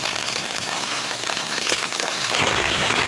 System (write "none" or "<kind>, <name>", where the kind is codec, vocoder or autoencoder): codec, SNAC